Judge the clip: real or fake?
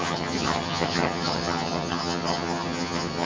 fake